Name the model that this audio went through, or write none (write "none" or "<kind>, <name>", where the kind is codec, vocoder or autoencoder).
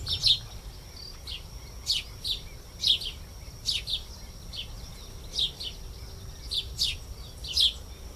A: none